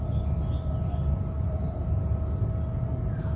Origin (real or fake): real